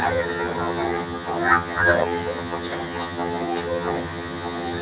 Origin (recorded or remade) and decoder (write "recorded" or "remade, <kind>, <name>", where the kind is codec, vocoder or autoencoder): remade, vocoder, HiFi-GAN